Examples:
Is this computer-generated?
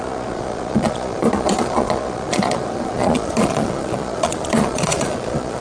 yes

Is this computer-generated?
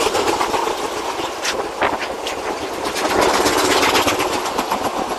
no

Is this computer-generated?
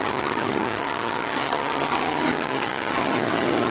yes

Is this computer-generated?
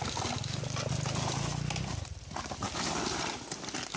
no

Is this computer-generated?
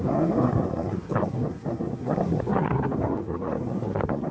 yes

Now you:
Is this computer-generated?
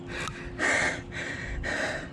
no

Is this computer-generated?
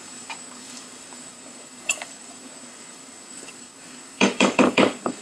yes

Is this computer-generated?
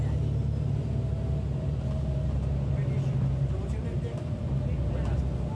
no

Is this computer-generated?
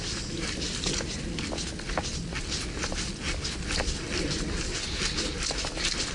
no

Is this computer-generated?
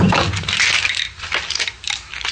no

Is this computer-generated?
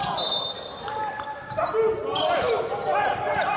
no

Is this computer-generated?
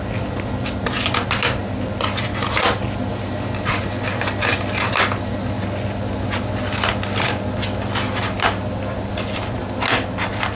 no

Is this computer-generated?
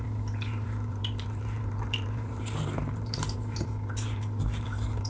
yes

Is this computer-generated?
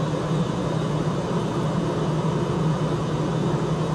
no